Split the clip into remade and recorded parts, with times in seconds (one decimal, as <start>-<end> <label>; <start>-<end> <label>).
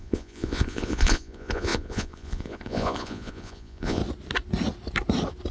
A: 0.0-4.0 remade; 4.0-5.5 recorded